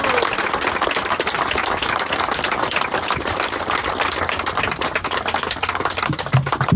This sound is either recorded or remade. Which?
recorded